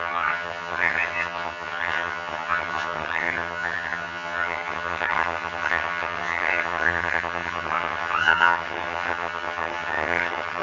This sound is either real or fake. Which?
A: fake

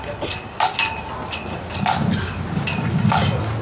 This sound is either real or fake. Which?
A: real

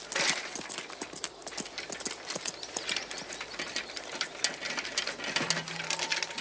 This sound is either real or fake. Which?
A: real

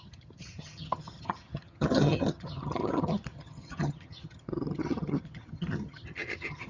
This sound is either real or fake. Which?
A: fake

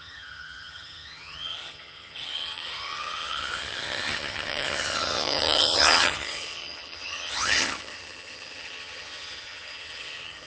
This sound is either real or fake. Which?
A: fake